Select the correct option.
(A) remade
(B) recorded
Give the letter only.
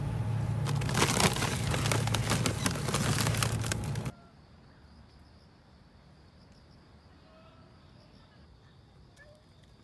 B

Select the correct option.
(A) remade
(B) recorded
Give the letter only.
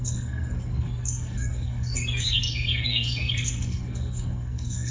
A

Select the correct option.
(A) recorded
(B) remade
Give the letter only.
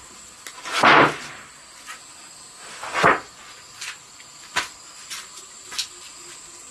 A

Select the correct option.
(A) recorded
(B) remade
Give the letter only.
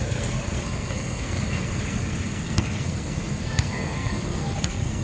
B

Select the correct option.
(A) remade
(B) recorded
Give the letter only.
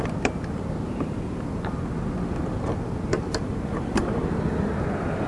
B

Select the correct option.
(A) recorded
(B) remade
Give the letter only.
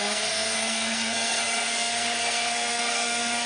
B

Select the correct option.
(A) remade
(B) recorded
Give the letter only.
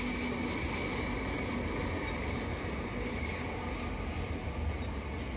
B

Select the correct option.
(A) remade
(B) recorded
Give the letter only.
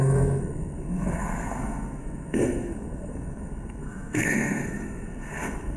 A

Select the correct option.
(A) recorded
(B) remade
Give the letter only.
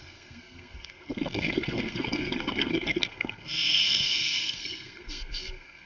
B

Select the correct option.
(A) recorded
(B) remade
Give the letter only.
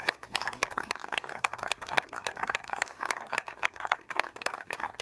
B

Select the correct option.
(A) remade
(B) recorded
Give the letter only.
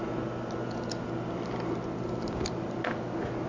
B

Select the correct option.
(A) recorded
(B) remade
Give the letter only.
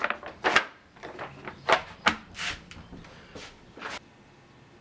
A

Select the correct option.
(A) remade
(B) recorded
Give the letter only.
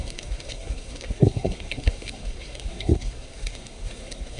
A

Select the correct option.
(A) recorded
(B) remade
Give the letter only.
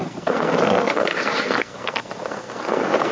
B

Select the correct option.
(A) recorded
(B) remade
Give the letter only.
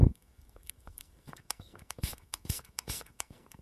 B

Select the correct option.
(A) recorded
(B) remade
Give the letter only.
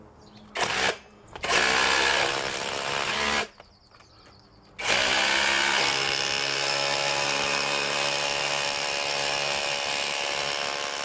A